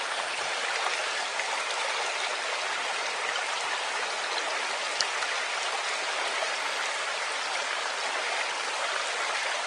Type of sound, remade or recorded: recorded